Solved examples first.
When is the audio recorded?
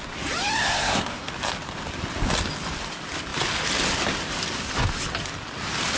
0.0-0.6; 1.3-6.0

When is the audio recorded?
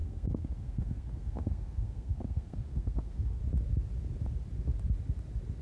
3.4-5.6